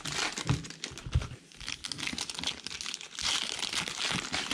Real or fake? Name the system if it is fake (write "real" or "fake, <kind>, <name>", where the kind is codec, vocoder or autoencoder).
real